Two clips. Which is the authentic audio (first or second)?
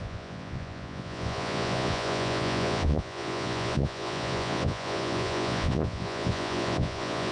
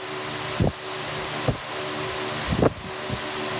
second